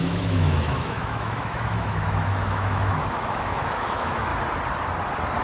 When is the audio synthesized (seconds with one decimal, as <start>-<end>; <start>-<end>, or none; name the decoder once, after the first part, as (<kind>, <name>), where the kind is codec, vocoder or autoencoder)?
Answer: 0.0-4.3 (autoencoder, DAC-VAE)